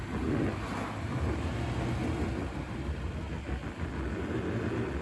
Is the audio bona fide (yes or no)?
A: yes